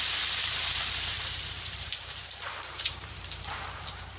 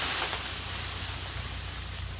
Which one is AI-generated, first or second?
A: first